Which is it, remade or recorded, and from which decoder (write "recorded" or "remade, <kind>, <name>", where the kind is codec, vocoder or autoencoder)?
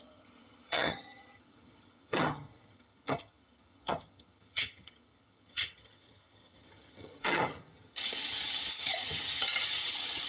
remade, vocoder, HiFi-GAN